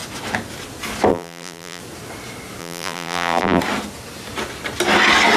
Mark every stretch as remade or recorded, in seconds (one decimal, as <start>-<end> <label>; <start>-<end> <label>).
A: 0.0-1.1 recorded; 1.1-1.8 remade; 1.8-2.6 recorded; 2.6-3.6 remade; 3.6-5.4 recorded